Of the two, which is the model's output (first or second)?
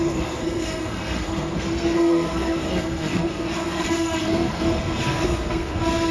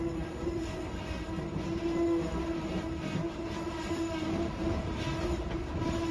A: first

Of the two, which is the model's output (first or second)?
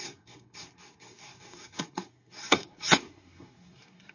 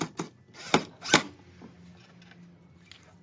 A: first